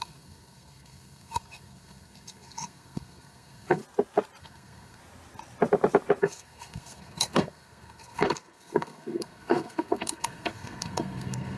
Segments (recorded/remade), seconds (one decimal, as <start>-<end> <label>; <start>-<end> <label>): 0.0-3.8 remade; 3.8-4.4 recorded; 4.4-5.0 remade; 5.0-6.2 recorded; 6.2-11.6 remade